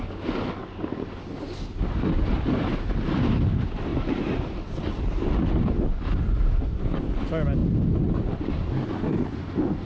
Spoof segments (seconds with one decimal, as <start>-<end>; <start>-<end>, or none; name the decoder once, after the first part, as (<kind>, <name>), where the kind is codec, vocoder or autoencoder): none